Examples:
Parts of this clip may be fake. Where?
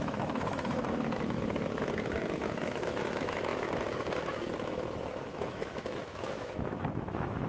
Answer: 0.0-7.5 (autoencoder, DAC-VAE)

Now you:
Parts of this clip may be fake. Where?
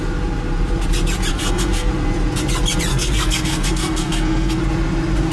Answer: 1.3-1.9 (codec, SNAC); 2.9-4.6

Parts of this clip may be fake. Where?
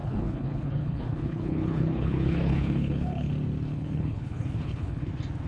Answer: 0.0-3.3 (codec, HILCodec); 3.7-5.1